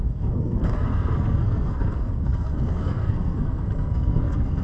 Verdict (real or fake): fake